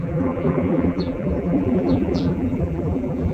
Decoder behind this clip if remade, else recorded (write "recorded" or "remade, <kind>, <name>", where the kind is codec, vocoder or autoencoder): remade, vocoder, BigVGAN v2